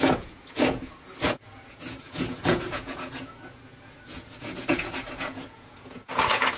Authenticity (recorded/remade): remade